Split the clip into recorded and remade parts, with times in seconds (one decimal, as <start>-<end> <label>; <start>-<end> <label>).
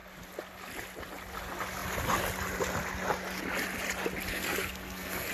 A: 0.0-4.3 recorded; 4.3-5.3 remade